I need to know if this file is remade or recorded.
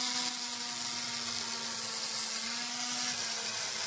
recorded